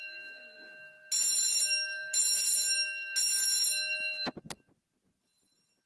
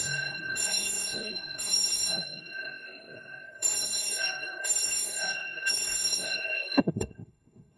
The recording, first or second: first